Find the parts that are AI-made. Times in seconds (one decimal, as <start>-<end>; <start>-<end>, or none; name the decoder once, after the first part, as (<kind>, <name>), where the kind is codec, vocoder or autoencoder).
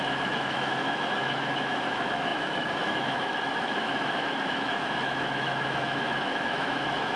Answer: 0.0-7.2 (autoencoder, DAC-VAE)